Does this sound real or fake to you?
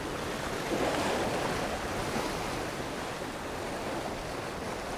real